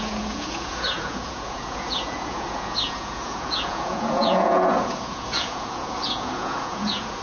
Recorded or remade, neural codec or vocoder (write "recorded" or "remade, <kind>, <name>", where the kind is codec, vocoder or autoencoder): remade, vocoder, Vocos